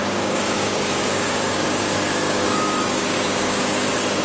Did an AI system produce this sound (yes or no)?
yes